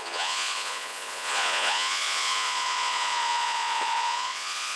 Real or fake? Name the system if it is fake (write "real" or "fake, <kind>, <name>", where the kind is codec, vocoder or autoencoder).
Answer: fake, vocoder, Vocos